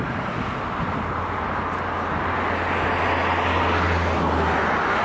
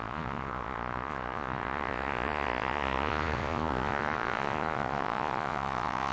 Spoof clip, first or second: second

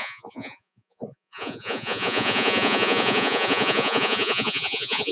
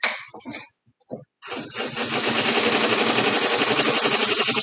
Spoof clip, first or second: first